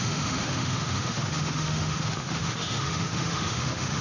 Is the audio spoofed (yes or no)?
yes